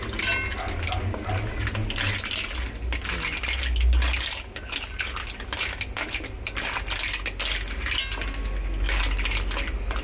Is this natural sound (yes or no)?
yes